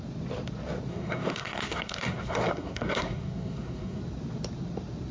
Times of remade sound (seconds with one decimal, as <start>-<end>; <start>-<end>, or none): 0.9-4.0

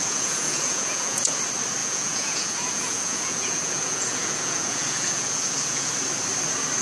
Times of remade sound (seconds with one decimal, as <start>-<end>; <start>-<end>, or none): 0.0-1.4; 1.8-5.9

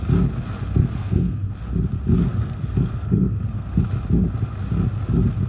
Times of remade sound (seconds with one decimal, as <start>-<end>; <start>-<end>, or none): 0.8-1.5; 2.3-3.8

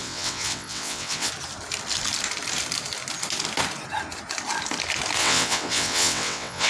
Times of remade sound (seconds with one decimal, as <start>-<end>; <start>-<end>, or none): 0.0-1.3; 5.2-6.7

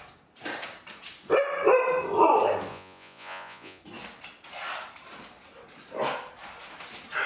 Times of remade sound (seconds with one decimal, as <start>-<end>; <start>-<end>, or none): 2.7-3.8